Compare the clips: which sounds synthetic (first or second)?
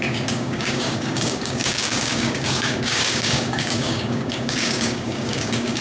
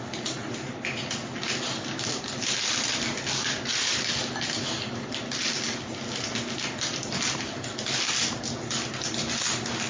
first